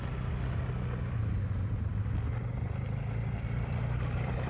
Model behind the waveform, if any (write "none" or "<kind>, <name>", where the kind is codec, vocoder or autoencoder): none